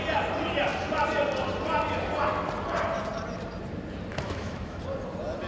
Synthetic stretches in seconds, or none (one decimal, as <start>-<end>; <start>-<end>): 4.1-4.8